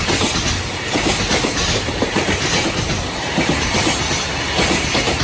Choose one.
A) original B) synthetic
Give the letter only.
A